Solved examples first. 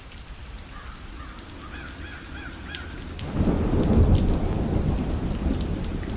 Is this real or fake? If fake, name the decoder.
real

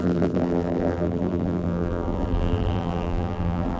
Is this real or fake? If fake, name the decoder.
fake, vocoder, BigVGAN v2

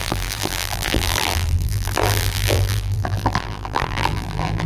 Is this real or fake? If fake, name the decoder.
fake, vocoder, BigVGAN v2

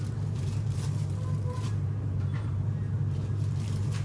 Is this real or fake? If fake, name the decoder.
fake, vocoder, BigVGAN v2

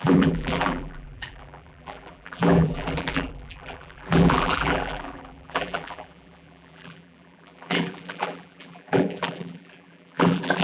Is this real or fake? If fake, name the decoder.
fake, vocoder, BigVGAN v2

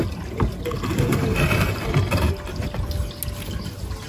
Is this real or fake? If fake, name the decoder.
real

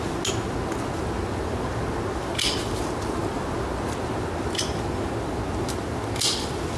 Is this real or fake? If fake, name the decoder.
real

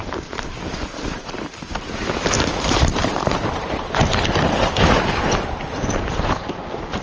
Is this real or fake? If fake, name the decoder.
fake, vocoder, BigVGAN v2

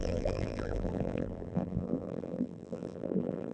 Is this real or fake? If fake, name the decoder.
fake, vocoder, BigVGAN v2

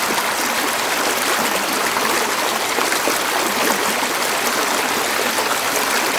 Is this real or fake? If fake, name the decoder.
real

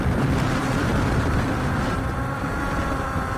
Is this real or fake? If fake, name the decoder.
fake, vocoder, BigVGAN v2